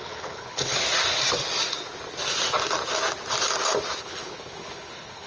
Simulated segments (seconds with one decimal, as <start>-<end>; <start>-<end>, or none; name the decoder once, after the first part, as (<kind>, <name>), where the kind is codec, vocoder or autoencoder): 0.0-0.8 (codec, HILCodec); 4.0-5.3